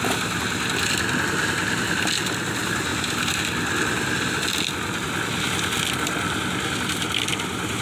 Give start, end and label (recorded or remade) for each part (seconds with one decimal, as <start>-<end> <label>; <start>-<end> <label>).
0.0-7.8 recorded